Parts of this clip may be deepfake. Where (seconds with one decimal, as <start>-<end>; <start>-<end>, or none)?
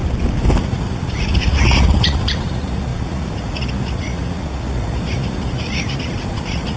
0.6-6.8